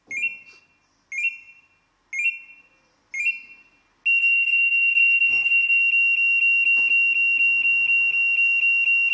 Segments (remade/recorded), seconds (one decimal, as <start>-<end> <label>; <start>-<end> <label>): 0.0-4.2 recorded; 4.2-5.8 remade; 5.8-9.1 recorded